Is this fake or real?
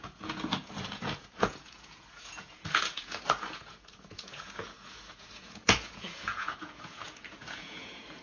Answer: fake